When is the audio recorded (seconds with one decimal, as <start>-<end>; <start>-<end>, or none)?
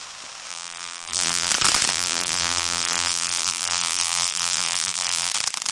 0.0-0.5; 1.5-1.9; 5.3-5.7